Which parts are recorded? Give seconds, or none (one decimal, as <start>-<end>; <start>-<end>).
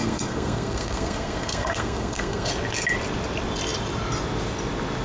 2.5-5.0